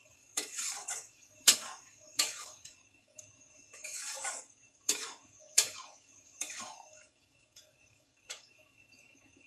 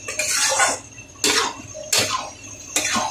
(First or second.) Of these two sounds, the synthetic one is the first